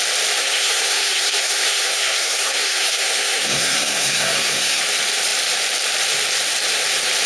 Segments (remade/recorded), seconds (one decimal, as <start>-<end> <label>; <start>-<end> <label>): 0.0-0.4 recorded; 0.4-4.8 remade; 4.8-7.3 recorded